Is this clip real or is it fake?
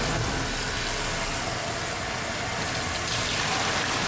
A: real